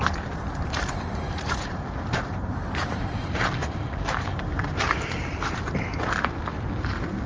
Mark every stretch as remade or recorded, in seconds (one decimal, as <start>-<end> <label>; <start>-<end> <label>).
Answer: 0.0-7.3 remade